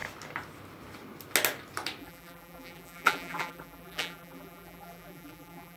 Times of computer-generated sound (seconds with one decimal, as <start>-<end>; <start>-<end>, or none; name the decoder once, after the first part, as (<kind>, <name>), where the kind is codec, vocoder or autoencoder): 2.0-5.8 (vocoder, BigVGAN v2)